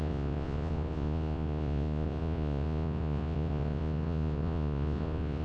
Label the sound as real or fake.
fake